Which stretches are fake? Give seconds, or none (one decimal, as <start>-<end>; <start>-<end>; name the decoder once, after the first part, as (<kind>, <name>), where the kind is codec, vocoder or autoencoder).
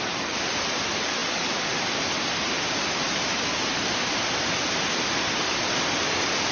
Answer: none